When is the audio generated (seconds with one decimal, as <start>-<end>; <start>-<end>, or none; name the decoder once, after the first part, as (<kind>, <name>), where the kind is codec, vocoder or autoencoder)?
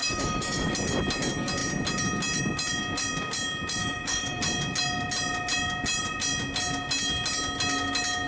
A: 0.0-0.7 (autoencoder, DAC-VAE); 3.8-4.4